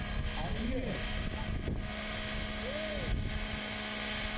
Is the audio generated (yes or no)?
no